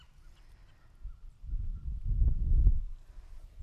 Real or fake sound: real